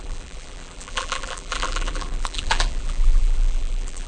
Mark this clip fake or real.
fake